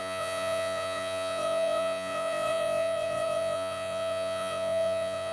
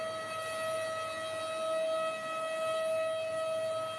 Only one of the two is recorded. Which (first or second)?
second